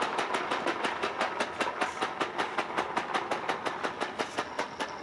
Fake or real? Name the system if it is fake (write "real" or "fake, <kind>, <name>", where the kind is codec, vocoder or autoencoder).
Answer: real